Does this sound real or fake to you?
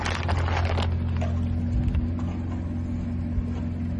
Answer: real